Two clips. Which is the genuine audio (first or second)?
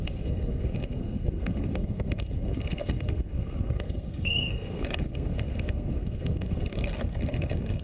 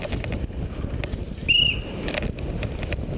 second